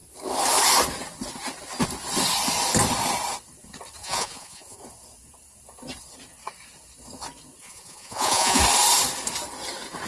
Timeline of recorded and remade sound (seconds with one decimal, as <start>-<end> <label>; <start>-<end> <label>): 0.0-4.0 recorded; 4.0-4.8 remade; 4.8-7.6 recorded; 7.6-8.6 remade; 8.6-10.1 recorded

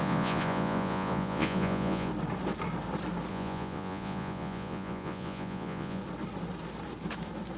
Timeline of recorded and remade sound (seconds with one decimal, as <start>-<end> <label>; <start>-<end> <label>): 0.0-2.1 remade; 2.1-3.3 recorded; 3.3-6.0 remade; 6.0-7.6 recorded

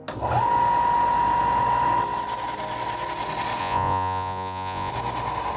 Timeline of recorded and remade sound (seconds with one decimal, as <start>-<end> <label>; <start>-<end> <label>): 0.0-3.6 recorded; 3.6-4.9 remade; 4.9-5.6 recorded

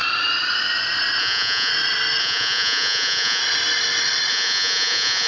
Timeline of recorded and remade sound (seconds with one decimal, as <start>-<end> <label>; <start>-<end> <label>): 0.0-1.2 recorded; 1.2-1.7 remade; 1.7-2.2 recorded; 2.2-3.4 remade; 3.4-4.3 recorded; 4.3-5.3 remade

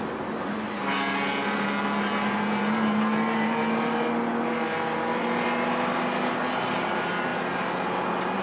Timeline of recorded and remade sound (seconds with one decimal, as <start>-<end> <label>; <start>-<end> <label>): 0.0-8.4 recorded

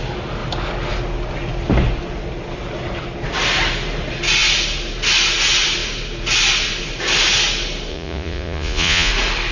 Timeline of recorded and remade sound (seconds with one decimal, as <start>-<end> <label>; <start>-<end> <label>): 0.0-7.9 recorded; 7.9-9.1 remade; 9.1-9.5 recorded

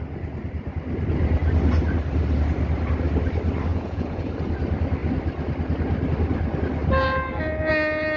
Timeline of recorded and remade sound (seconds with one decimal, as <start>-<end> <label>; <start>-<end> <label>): 0.0-3.7 recorded; 3.7-4.3 remade; 4.3-8.2 recorded

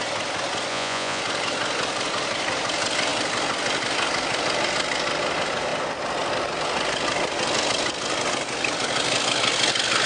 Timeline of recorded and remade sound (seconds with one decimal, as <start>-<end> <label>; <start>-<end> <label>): 0.0-0.7 recorded; 0.7-1.2 remade; 1.2-10.1 recorded